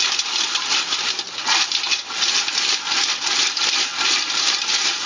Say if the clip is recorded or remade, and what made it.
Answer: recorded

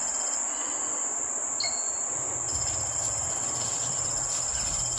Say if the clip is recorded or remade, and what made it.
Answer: recorded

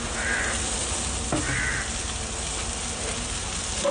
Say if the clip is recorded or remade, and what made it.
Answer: recorded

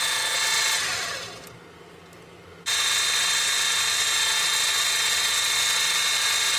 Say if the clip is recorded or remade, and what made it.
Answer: recorded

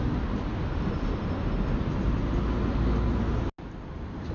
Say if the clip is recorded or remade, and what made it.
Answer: recorded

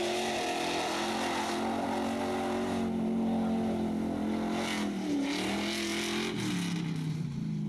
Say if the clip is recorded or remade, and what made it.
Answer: recorded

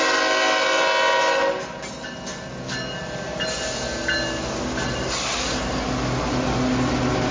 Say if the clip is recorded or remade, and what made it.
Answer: recorded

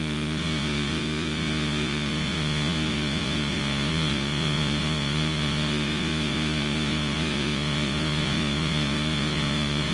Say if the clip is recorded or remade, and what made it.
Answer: remade, vocoder, Vocos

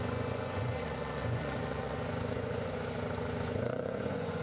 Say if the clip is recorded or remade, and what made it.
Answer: remade, vocoder, Vocos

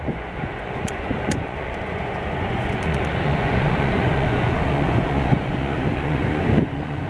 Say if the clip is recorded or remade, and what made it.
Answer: remade, vocoder, Vocos